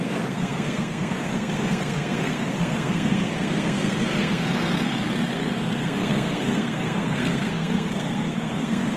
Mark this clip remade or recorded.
remade